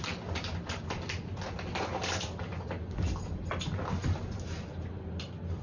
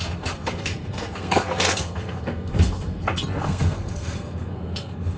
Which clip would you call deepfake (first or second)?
second